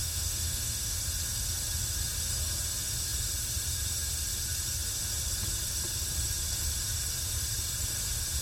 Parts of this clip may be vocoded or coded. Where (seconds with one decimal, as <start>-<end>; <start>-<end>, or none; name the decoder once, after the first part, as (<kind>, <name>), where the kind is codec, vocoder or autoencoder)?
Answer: 0.0-1.0 (autoencoder, DAC-VAE)